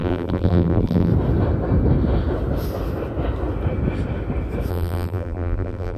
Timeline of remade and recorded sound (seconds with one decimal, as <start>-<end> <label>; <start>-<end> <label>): 0.0-1.1 remade; 1.1-4.7 recorded; 4.7-6.0 remade